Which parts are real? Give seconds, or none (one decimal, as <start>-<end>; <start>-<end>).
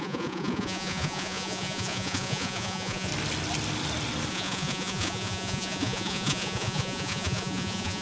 3.1-4.3